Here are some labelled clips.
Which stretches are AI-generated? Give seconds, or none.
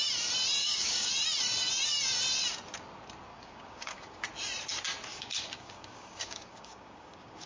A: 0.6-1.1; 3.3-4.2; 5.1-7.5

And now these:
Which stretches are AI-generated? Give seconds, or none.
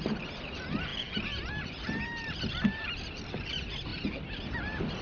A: none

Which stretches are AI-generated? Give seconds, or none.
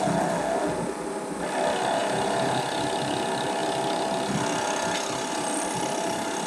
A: 2.0-2.6